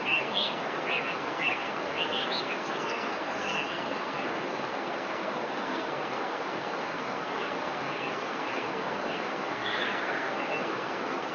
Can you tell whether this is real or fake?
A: fake